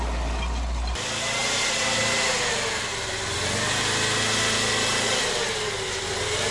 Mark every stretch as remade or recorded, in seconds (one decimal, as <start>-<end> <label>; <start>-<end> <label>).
0.0-1.4 recorded; 1.4-2.0 remade; 2.0-6.5 recorded